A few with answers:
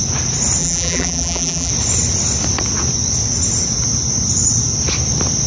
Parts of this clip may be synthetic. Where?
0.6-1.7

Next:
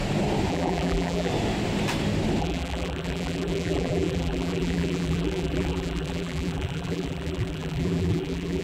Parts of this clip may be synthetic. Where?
0.5-1.3; 2.4-8.6